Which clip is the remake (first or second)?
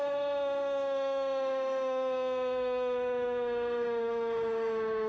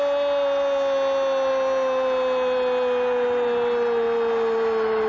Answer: first